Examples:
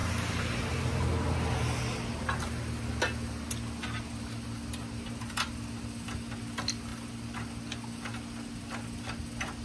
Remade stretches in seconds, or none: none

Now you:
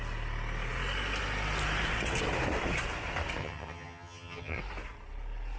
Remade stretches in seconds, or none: 3.4-4.6

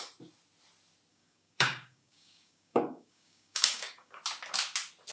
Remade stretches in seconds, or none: 1.1-4.2

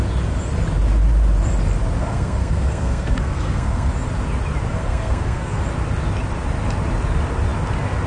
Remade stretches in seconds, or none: 2.0-3.9; 4.7-5.6

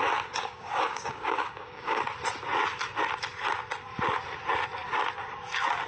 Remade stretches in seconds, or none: 0.4-2.0

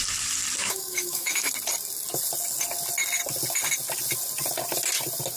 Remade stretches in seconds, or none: 0.6-1.5

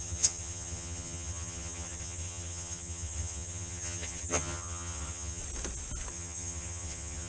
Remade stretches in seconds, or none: 0.0-5.4; 6.1-7.3